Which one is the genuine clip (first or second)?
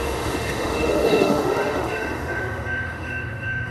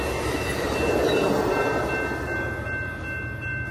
second